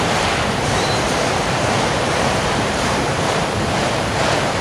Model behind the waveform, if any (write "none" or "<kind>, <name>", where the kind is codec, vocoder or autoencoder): vocoder, BigVGAN v2